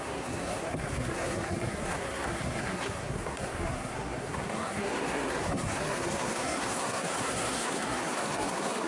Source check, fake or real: fake